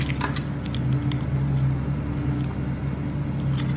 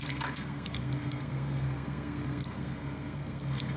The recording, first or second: first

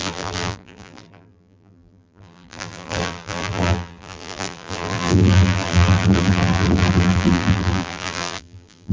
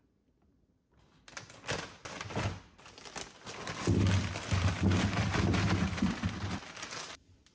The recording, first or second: second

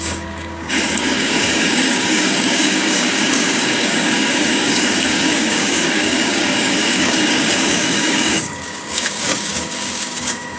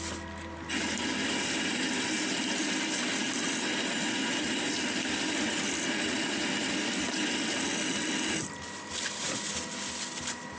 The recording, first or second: second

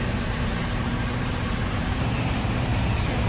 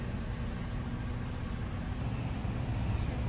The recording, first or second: second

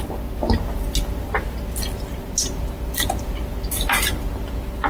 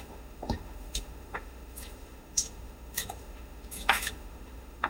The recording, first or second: first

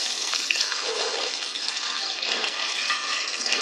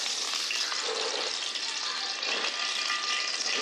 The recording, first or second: second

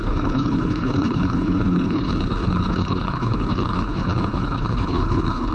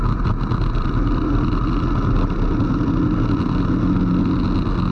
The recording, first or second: second